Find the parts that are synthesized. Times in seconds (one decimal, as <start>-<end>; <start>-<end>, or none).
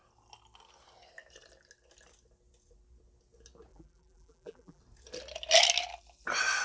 3.7-4.8